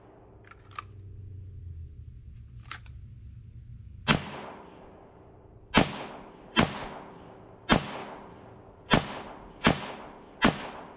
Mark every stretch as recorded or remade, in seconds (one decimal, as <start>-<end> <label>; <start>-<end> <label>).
0.0-11.0 recorded

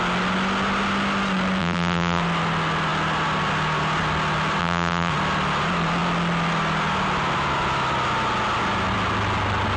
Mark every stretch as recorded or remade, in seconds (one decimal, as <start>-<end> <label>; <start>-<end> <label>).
0.0-1.6 recorded; 1.6-2.2 remade; 2.2-4.6 recorded; 4.6-5.1 remade; 5.1-9.8 recorded

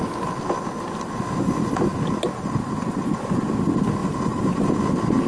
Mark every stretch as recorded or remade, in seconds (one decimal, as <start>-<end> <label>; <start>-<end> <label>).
0.0-4.0 recorded; 4.0-4.7 remade; 4.7-5.3 recorded

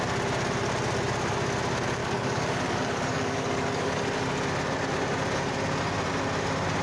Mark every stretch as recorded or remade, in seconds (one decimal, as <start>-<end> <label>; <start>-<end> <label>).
0.0-2.0 recorded; 2.0-4.0 remade; 4.0-6.8 recorded

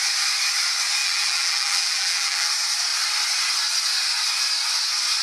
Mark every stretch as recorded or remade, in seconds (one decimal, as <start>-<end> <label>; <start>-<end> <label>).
0.0-1.0 recorded; 1.0-2.5 remade; 2.5-5.2 recorded

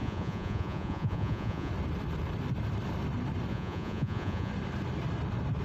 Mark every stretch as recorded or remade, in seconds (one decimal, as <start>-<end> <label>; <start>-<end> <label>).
0.0-1.7 remade; 1.7-3.5 recorded; 3.5-4.5 remade; 4.5-5.6 recorded